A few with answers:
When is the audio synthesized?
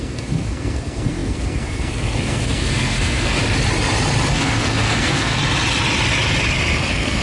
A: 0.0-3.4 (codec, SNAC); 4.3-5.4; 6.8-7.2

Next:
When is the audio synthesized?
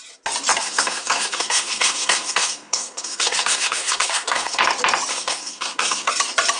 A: 0.6-4.6 (codec, SNAC); 5.1-6.1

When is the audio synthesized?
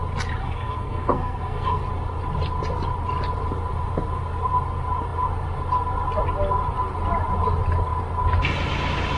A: 0.4-1.8 (codec, SNAC)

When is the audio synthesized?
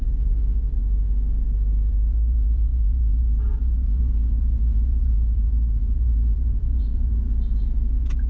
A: 0.0-0.8 (vocoder, Vocos); 1.9-8.3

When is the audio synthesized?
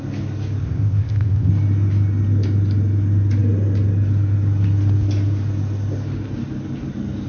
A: 0.6-1.5 (codec, ZipCodec)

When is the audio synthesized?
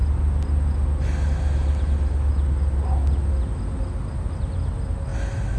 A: none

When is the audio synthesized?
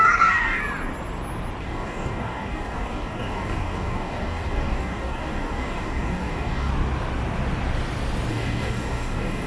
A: 0.0-0.6 (codec, DAC); 1.6-6.7; 8.3-9.5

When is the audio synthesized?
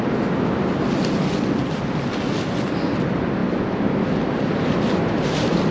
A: 3.4-5.2 (vocoder, BigVGAN v2)